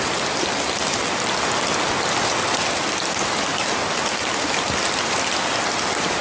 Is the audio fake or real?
real